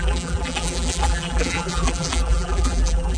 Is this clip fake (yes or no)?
yes